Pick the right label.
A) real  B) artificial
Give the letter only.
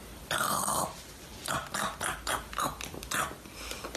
A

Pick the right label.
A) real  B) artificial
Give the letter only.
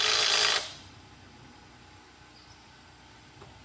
A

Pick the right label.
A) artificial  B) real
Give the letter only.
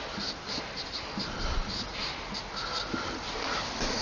B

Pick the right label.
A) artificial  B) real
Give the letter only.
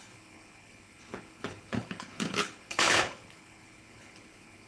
A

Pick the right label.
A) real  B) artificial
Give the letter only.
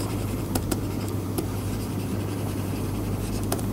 B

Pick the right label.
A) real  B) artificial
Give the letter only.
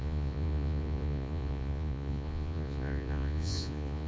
B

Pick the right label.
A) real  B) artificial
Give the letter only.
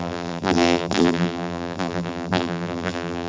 B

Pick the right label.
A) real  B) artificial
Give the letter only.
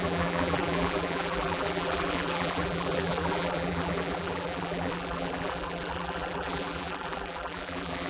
B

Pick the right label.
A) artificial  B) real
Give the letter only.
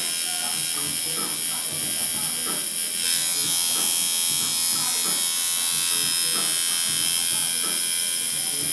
B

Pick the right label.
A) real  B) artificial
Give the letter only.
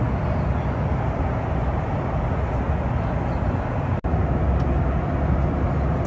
A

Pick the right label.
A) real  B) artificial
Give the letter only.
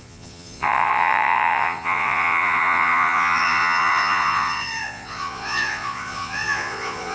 B